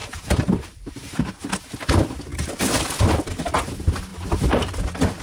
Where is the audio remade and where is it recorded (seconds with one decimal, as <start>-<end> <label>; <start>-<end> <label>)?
0.0-1.2 remade; 1.2-4.1 recorded; 4.1-4.7 remade; 4.7-5.2 recorded